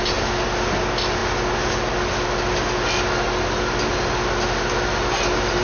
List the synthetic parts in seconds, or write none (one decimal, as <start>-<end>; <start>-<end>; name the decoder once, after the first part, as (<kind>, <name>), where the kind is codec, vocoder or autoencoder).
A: none

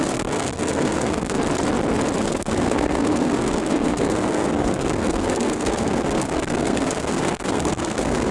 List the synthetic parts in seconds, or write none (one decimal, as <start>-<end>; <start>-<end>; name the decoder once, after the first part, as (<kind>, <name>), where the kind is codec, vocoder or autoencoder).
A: 0.0-1.4 (codec, SNAC); 2.2-8.3

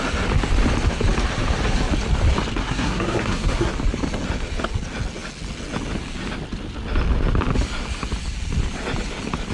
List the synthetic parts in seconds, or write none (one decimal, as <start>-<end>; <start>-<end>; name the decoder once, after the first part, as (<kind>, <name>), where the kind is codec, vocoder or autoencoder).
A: 2.6-3.7 (codec, SNAC)

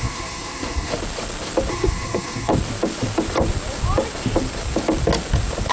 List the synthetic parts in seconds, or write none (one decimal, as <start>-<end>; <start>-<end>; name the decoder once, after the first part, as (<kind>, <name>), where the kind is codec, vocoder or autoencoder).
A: 0.0-0.9 (codec, SNAC); 1.7-2.5

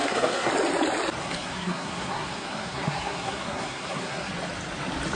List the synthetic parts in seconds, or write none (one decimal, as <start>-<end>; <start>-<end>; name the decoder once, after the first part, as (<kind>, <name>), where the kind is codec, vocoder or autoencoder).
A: 0.0-0.5 (codec, SNAC); 1.2-4.3

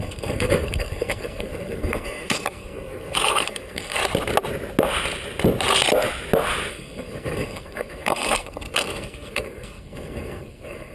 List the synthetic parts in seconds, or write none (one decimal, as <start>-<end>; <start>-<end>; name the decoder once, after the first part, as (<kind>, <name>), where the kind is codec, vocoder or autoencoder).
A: 0.0-4.0 (codec, SNAC); 6.7-10.9

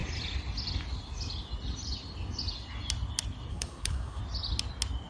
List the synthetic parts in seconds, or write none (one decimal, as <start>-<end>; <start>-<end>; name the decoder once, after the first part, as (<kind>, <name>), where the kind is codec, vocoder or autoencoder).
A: 3.5-4.2 (codec, SNAC)